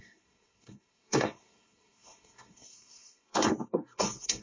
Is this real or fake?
fake